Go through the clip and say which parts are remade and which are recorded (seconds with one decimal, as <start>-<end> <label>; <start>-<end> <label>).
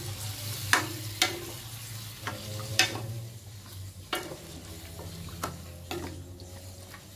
0.0-2.7 recorded; 2.7-4.4 remade; 4.4-7.2 recorded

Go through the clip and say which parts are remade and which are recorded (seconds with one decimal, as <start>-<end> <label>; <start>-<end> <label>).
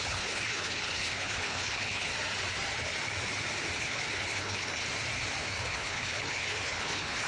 0.0-2.1 remade; 2.1-3.8 recorded; 3.8-4.8 remade; 4.8-5.4 recorded; 5.4-7.3 remade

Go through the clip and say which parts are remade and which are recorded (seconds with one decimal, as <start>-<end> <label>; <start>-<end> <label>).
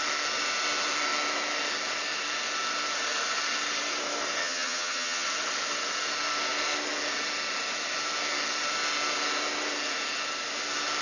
0.0-4.4 recorded; 4.4-5.3 remade; 5.3-11.0 recorded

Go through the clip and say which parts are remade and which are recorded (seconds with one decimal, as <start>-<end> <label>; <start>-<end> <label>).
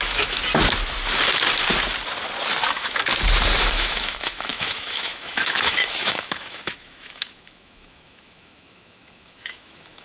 0.0-0.4 remade; 0.4-2.7 recorded; 2.7-3.1 remade; 3.1-3.6 recorded; 3.6-10.0 remade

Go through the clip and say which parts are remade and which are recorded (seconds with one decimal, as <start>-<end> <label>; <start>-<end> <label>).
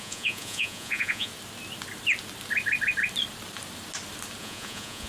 0.0-1.3 remade; 1.3-4.4 recorded; 4.4-5.1 remade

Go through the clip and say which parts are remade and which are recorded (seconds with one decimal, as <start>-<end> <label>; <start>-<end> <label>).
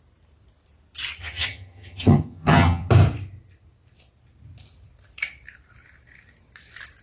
0.0-1.2 recorded; 1.2-2.9 remade; 2.9-7.0 recorded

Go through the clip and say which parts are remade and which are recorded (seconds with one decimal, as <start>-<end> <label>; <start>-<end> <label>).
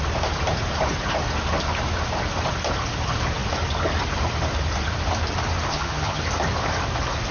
0.0-5.7 recorded; 5.7-6.2 remade; 6.2-7.3 recorded